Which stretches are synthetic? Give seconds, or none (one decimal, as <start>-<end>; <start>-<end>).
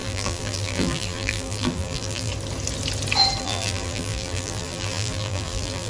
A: 0.0-2.3; 3.4-5.9